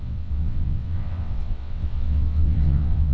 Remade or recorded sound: remade